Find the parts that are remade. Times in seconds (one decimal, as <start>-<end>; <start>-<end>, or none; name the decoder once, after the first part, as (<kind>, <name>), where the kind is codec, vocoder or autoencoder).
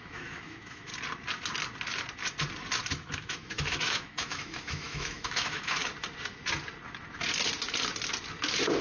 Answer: 0.0-0.9 (autoencoder, DAC-VAE); 2.9-5.8